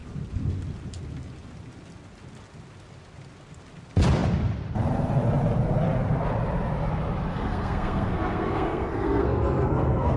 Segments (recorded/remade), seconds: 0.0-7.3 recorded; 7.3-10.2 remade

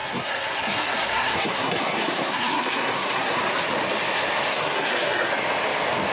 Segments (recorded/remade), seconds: 0.0-3.4 remade; 3.4-4.5 recorded; 4.5-5.3 remade; 5.3-6.1 recorded

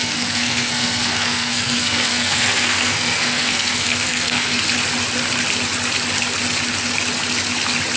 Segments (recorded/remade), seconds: 0.0-4.6 remade; 4.6-8.0 recorded

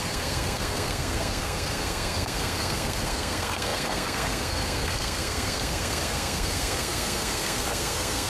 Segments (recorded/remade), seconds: 0.0-8.3 remade

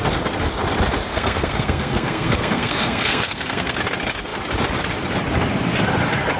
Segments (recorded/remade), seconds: 0.0-1.1 recorded; 1.1-3.8 remade; 3.8-6.4 recorded